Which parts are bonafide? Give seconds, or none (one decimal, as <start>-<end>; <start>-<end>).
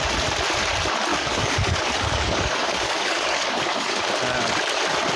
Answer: 0.0-1.1; 4.0-5.2